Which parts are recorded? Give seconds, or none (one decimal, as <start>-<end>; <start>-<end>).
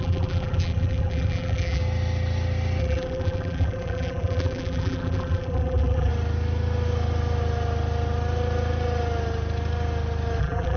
1.8-2.8; 6.1-10.4